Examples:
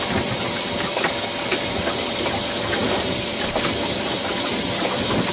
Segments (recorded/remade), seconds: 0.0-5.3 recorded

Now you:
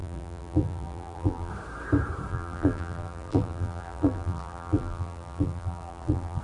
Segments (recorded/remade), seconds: 0.0-1.5 remade; 1.5-2.3 recorded; 2.3-6.4 remade

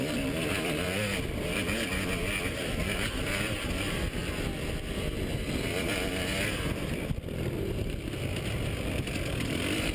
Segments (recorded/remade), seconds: 0.0-9.9 remade

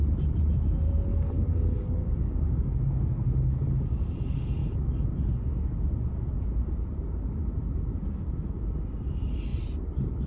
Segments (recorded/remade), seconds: 0.0-1.1 recorded; 1.1-2.8 remade; 2.8-10.3 recorded

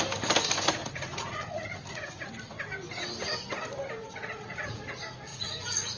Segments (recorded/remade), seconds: 0.0-0.8 recorded; 0.8-2.3 remade; 2.3-4.0 recorded; 4.0-4.8 remade; 4.8-5.3 recorded; 5.3-6.0 remade

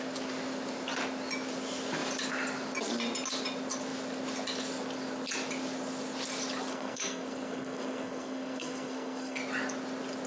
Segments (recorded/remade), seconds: 0.0-6.7 recorded; 6.7-9.4 remade; 9.4-10.3 recorded

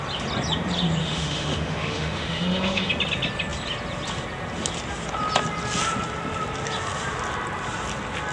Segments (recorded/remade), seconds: 0.0-1.0 recorded; 1.0-2.9 remade; 2.9-8.3 recorded